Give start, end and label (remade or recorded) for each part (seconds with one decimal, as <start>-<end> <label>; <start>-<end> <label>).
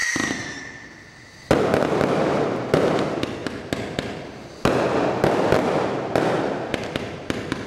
0.0-7.7 recorded